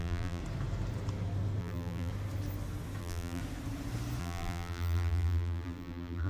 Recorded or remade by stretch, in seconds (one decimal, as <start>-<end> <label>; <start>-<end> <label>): 0.0-0.4 remade; 0.4-1.6 recorded; 1.6-2.1 remade; 2.1-3.0 recorded; 3.0-3.4 remade; 3.4-4.2 recorded; 4.2-6.3 remade